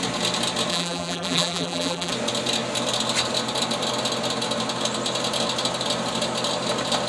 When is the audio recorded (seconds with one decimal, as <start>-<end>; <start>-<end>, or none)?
0.0-0.7; 2.1-7.1